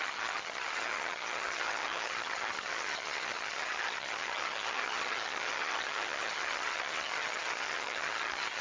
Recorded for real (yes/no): no